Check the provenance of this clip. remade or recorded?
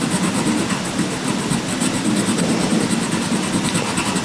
recorded